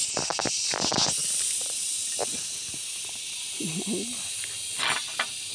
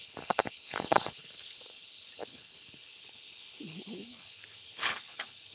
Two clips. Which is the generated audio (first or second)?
second